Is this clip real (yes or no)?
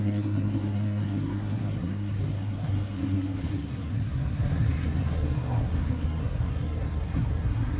no